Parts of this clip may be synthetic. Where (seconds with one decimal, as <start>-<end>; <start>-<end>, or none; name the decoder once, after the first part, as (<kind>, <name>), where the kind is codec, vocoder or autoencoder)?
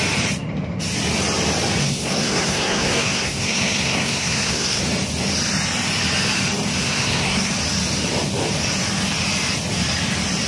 1.8-4.8 (codec, SNAC); 6.8-7.5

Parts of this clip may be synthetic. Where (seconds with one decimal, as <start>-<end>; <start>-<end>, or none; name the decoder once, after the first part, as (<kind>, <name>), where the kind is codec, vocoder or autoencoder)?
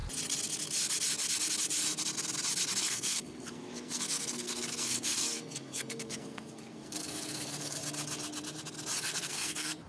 2.8-7.8 (codec, SNAC); 9.0-9.9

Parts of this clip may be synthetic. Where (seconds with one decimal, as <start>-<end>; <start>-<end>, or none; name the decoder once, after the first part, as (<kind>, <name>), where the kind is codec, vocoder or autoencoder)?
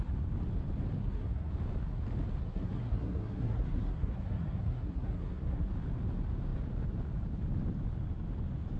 1.0-1.5 (codec, SNAC); 2.4-5.7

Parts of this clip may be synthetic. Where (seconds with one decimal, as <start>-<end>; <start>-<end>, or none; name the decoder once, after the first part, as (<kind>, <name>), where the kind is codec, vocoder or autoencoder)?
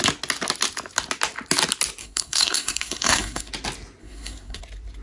2.0-3.5 (codec, SNAC); 4.0-4.6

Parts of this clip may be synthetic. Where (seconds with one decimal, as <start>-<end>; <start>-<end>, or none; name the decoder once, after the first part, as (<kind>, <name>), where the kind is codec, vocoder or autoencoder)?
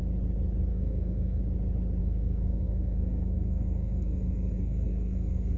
0.7-1.4 (codec, SNAC); 2.0-5.6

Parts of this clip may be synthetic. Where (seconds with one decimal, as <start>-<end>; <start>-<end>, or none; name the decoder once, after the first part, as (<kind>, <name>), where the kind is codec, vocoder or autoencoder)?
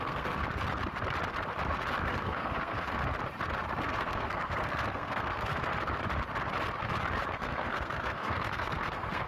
0.0-0.4 (codec, SNAC); 2.0-3.0; 3.8-5.7; 7.3-9.3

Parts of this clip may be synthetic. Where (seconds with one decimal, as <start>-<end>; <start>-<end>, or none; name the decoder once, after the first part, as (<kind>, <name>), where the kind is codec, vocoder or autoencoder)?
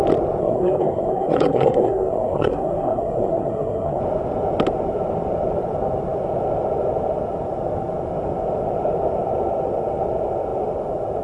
0.4-4.0 (codec, SNAC)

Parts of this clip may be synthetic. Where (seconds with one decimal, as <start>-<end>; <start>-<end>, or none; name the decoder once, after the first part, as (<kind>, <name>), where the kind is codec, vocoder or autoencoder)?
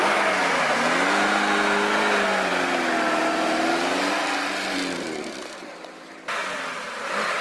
none